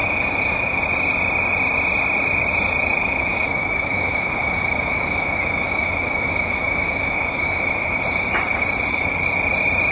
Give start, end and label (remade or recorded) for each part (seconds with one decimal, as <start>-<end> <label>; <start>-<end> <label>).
0.0-0.8 remade; 0.8-3.0 recorded; 3.0-8.0 remade; 8.0-9.9 recorded